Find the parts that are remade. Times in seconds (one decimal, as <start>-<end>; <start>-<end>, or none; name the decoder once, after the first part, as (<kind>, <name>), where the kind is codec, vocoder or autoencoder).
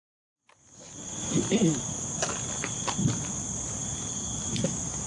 none